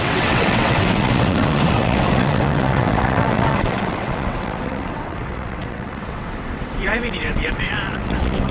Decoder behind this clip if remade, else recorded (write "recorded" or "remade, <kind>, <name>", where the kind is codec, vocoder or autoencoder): remade, vocoder, WaveNeXt